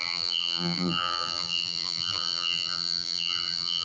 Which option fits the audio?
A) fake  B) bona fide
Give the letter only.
A